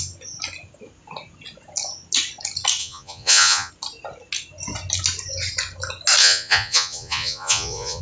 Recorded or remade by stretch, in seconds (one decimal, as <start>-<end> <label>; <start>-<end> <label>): 0.0-2.8 recorded; 2.8-3.7 remade; 3.7-6.2 recorded; 6.2-8.0 remade